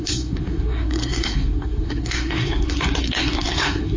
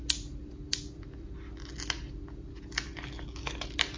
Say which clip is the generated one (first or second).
first